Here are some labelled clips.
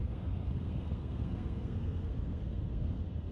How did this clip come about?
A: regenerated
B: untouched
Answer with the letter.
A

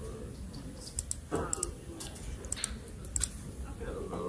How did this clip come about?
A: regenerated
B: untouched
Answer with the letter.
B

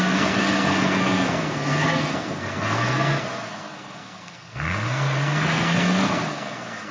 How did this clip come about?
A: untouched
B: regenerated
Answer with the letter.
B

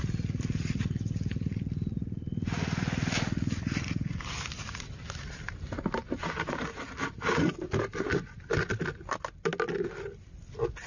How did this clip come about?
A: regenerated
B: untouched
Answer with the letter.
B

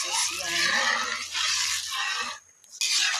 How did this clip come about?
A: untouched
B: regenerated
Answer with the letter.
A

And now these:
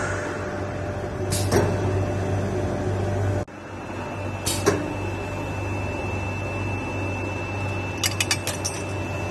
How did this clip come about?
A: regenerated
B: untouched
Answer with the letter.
B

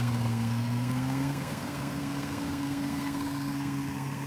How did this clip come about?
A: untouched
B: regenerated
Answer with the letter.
B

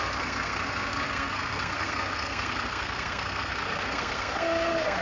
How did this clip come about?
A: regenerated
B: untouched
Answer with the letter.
A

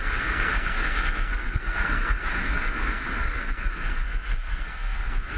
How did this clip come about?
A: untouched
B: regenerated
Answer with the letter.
B